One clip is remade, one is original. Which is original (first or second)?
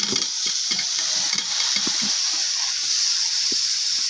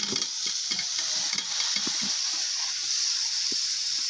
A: second